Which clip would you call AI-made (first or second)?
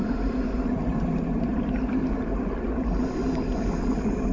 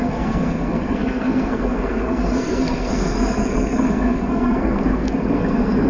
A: second